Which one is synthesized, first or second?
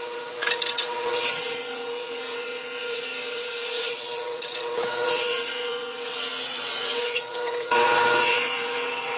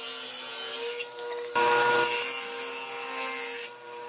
first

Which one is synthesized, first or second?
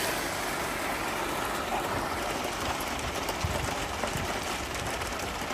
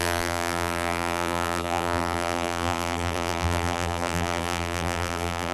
second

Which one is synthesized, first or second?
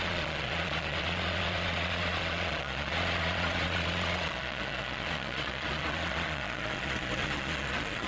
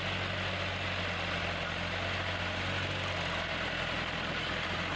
first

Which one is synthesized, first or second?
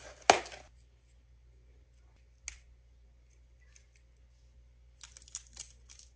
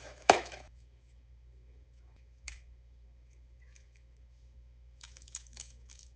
second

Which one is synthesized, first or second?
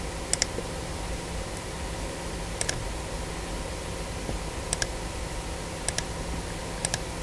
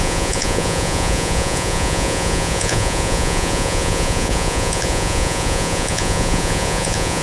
second